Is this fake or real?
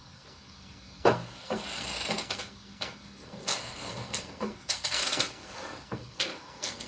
fake